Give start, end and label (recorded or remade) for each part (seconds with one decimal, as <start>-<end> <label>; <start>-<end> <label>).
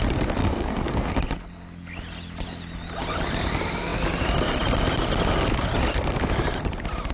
0.0-0.4 recorded; 0.4-1.1 remade; 1.1-7.1 recorded